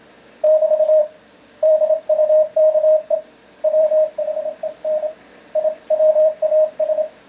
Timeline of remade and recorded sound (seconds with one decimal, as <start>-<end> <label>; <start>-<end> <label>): 0.0-7.3 remade